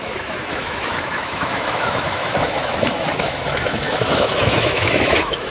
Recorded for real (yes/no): no